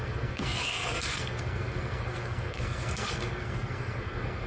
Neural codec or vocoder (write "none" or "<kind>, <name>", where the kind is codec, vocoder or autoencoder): codec, SNAC